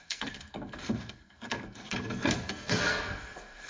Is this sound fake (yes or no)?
yes